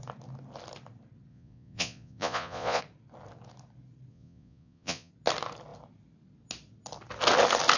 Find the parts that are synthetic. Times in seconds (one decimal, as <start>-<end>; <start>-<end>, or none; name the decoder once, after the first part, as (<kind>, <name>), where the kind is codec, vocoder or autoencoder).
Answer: 1.3-2.8 (vocoder, Vocos); 4.1-5.1